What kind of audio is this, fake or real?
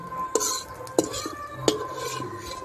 real